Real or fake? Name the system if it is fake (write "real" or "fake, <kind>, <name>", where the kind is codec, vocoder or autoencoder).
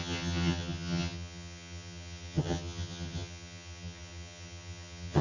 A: fake, vocoder, HiFi-GAN